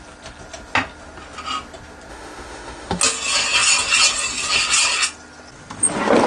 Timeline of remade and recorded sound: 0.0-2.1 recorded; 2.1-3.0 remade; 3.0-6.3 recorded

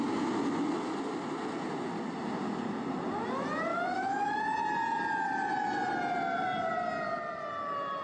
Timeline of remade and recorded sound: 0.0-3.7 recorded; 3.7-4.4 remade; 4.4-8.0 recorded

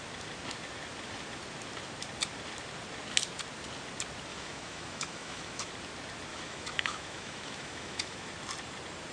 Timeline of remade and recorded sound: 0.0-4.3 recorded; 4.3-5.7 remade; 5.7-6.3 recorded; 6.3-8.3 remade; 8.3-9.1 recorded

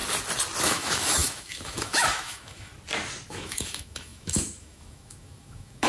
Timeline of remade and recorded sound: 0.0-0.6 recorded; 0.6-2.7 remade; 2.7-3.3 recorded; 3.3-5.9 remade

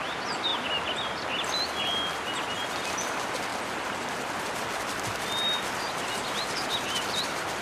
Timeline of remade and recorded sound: 0.0-7.6 recorded

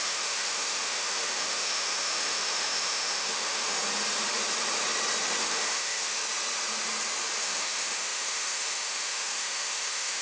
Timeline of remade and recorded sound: 0.0-3.8 remade; 3.8-5.4 recorded; 5.4-6.2 remade; 6.2-7.4 recorded; 7.4-10.2 remade